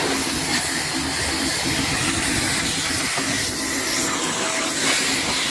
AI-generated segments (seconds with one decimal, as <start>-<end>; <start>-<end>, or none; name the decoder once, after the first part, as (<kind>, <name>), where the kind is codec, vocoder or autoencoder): none